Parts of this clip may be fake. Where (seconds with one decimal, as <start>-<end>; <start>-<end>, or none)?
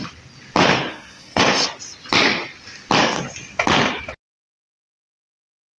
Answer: 0.9-1.4